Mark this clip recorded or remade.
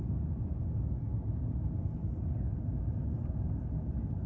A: recorded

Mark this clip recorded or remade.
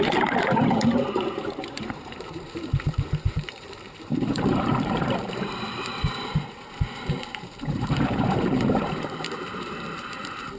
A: remade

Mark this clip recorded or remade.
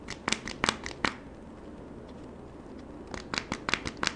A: recorded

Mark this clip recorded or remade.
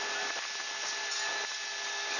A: recorded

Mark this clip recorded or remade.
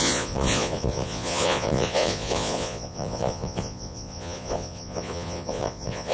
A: remade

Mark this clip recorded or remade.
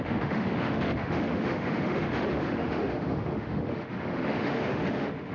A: remade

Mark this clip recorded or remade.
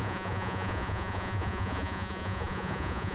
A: remade